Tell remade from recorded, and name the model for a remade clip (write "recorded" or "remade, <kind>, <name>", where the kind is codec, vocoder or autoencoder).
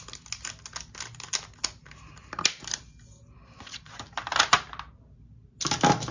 recorded